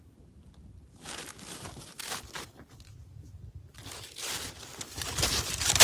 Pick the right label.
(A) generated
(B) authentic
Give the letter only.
B